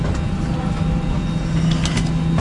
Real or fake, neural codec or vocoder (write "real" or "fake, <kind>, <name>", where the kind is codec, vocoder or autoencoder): real